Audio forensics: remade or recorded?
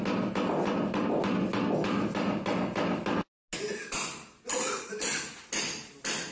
recorded